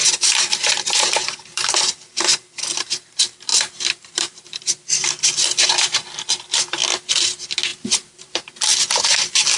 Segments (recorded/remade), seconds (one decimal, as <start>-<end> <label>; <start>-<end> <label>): 0.0-2.6 remade; 2.6-3.5 recorded; 3.5-5.1 remade; 5.1-7.7 recorded; 7.7-9.6 remade